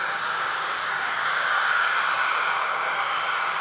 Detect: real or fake fake